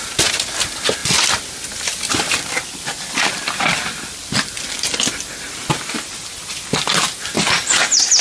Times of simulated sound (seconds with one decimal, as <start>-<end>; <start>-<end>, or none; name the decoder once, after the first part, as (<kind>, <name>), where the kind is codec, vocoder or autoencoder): none